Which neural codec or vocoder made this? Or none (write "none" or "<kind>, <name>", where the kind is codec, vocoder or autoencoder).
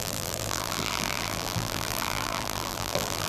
vocoder, BigVGAN v2